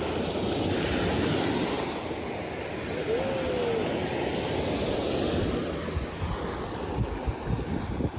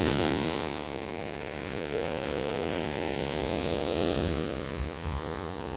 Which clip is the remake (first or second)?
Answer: second